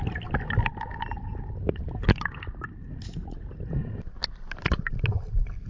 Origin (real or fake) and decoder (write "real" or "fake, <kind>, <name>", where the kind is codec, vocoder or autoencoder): real